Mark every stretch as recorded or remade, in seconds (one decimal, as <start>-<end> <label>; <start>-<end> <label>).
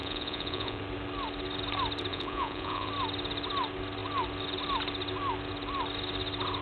0.0-0.8 remade; 0.8-2.1 recorded; 2.1-2.9 remade; 2.9-6.6 recorded